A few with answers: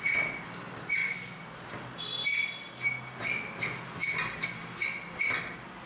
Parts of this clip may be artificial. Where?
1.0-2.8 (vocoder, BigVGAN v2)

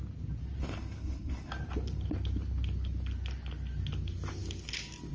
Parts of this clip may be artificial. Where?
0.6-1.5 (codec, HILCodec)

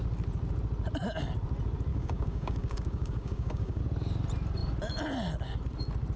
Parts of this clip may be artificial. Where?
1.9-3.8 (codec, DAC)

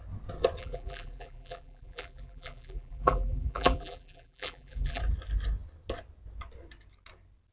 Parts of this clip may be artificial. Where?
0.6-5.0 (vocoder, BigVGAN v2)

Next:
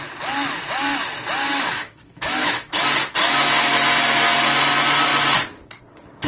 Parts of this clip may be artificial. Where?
1.4-2.7 (autoencoder, DAC-VAE)

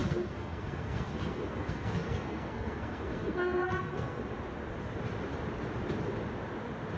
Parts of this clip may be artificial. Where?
0.0-4.2 (codec, SNAC)